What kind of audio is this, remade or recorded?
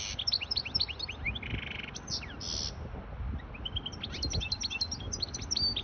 recorded